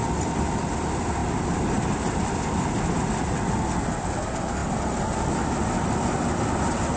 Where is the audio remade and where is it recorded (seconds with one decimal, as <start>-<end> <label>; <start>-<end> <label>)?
0.0-7.0 recorded